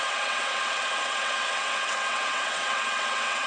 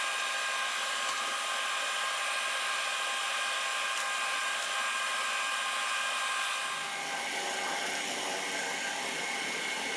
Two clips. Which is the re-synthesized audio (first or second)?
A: first